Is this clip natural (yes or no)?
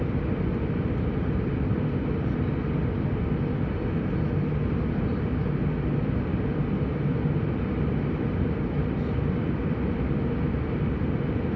yes